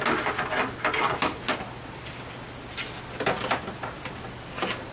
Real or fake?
real